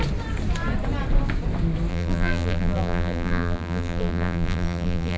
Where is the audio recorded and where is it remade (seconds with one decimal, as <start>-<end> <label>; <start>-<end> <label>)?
0.0-1.9 recorded; 1.9-5.2 remade